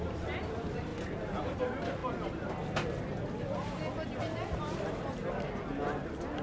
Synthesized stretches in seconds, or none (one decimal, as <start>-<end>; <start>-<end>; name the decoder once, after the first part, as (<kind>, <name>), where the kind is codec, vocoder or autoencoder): none